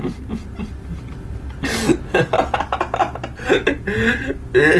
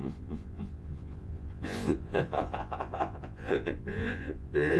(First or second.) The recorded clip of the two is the first